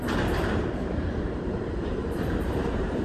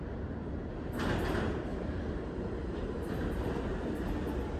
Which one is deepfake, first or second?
first